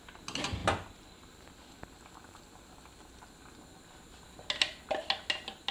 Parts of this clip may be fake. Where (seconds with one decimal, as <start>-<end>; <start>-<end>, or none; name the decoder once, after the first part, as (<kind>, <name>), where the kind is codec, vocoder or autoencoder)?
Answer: none